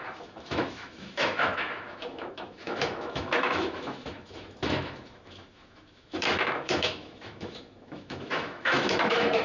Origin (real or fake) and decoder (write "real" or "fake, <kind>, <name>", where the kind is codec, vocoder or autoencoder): fake, autoencoder, DAC-VAE